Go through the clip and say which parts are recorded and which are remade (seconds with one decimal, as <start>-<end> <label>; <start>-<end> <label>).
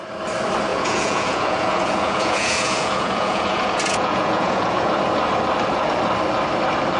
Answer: 0.0-0.7 recorded; 0.7-4.9 remade; 4.9-7.0 recorded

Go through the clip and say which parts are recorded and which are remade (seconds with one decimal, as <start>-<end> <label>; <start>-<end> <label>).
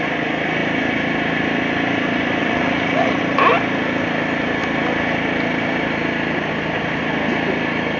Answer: 0.0-2.4 recorded; 2.4-3.2 remade; 3.2-8.0 recorded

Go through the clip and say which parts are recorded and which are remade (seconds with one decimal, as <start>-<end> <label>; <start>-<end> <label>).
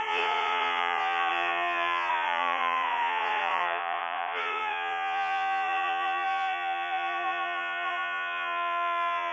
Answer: 0.0-9.3 remade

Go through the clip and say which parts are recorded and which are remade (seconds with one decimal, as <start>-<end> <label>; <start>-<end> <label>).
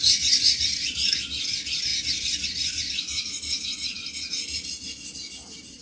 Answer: 0.0-5.8 recorded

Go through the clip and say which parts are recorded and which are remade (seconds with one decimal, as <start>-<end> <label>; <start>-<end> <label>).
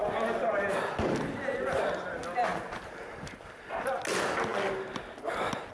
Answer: 0.0-5.7 recorded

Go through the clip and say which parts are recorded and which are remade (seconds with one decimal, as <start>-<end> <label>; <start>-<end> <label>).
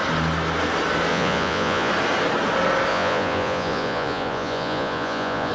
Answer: 0.0-1.1 recorded; 1.1-1.9 remade; 1.9-2.9 recorded; 2.9-5.5 remade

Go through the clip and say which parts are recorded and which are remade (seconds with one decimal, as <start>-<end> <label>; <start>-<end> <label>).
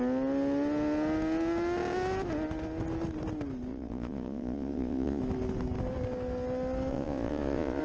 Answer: 0.0-3.7 recorded; 3.7-5.2 remade; 5.2-6.9 recorded; 6.9-7.8 remade